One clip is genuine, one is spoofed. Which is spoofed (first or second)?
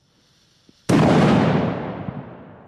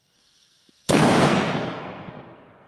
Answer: second